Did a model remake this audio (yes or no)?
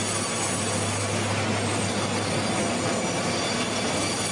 no